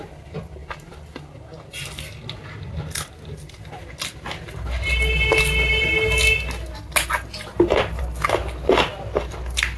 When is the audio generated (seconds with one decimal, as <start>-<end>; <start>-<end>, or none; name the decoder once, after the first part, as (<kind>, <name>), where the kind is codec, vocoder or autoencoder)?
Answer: none